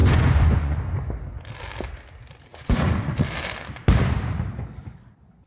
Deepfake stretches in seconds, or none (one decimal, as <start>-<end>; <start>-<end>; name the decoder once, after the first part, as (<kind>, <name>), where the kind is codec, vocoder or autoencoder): 0.0-0.8 (vocoder, Vocos); 2.5-3.1